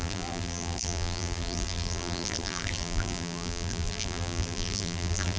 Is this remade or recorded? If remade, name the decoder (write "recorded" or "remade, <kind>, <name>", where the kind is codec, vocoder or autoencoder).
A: remade, vocoder, BigVGAN v2